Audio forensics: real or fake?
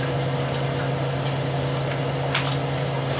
real